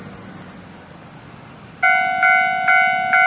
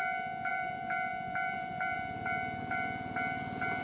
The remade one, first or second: second